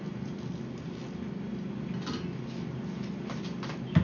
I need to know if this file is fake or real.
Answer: real